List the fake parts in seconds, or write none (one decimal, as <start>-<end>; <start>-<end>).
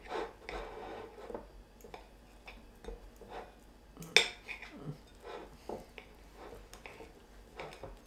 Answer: none